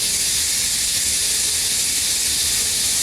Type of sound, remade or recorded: recorded